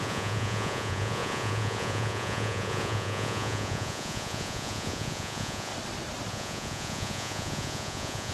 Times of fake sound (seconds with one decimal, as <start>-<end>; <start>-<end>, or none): 0.0-5.7; 6.3-8.3